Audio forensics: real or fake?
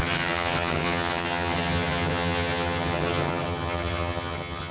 fake